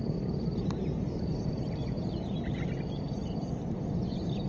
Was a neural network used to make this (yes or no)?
yes